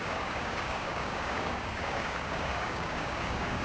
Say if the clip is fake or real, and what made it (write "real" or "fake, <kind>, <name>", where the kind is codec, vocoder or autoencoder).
fake, codec, DAC